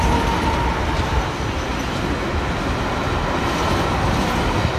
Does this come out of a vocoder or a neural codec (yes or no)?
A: no